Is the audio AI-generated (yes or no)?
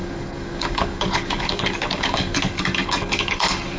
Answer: yes